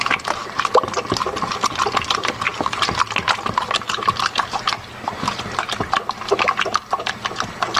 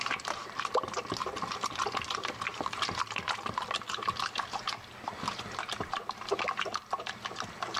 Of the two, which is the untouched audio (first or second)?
first